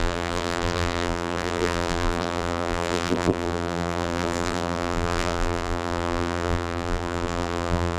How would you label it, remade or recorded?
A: remade